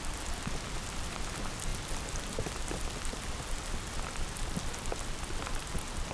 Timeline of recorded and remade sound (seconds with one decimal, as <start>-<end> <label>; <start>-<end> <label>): 0.0-6.1 recorded